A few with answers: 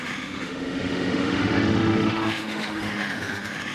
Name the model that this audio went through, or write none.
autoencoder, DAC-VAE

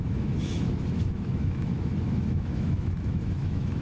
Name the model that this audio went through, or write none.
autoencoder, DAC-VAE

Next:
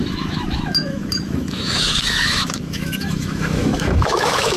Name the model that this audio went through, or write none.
autoencoder, DAC-VAE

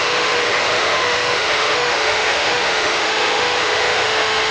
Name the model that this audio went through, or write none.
autoencoder, DAC-VAE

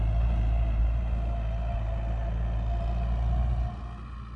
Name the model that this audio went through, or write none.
none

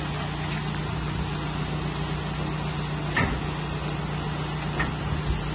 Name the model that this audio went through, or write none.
none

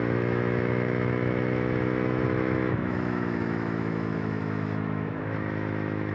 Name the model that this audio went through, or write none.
autoencoder, DAC-VAE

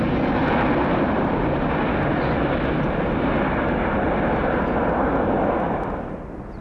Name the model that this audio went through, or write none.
none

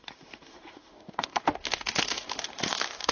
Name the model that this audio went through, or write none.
autoencoder, DAC-VAE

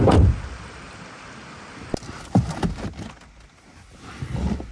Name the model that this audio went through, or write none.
none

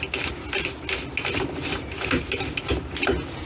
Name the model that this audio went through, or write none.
none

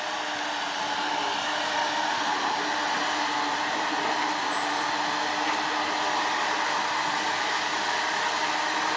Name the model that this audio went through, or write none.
none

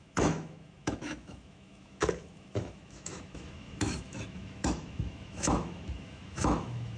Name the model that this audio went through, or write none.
autoencoder, DAC-VAE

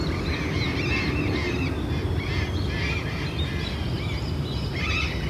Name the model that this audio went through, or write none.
none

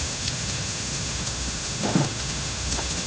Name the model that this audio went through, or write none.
autoencoder, DAC-VAE